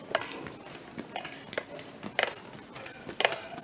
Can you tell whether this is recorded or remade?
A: recorded